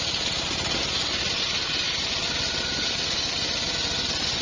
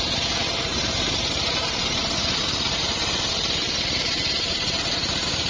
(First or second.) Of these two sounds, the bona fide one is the first